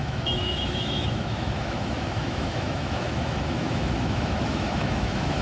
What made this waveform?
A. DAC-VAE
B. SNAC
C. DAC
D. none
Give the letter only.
A